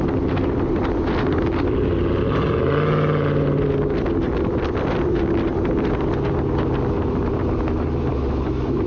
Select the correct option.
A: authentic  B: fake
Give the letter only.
A